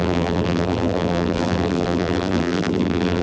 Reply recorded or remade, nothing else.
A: remade